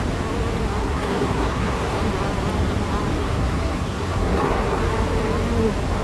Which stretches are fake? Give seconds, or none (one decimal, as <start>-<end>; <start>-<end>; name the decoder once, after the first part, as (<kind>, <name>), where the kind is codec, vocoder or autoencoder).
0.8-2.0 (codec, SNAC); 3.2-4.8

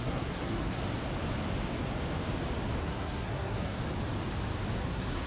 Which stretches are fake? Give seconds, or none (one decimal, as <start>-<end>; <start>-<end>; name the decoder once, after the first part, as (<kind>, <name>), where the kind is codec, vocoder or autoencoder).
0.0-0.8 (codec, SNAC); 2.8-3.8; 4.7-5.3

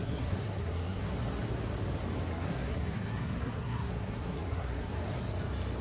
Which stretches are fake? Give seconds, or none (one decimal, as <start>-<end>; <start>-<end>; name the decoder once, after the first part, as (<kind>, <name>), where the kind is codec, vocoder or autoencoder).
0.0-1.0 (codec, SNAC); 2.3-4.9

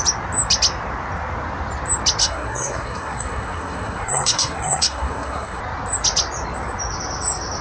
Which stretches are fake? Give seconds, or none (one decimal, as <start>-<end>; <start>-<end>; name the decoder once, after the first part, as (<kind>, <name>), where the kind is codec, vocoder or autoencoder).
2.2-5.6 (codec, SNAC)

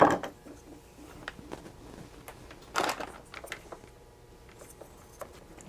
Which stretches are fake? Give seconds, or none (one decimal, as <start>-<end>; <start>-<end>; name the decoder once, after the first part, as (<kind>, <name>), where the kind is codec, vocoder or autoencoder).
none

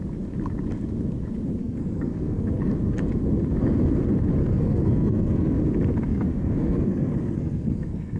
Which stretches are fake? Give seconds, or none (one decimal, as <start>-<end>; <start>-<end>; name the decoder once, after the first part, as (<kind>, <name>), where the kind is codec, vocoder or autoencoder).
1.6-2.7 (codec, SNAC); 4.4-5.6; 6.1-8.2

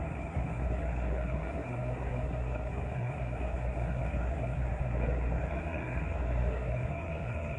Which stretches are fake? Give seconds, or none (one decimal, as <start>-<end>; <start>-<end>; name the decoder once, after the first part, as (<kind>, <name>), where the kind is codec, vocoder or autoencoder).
0.0-7.6 (codec, SNAC)